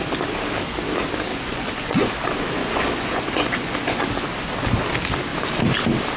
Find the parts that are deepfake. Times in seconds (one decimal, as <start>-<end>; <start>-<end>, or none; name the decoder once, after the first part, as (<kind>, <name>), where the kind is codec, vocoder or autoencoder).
1.3-2.1 (vocoder, Vocos); 2.6-4.0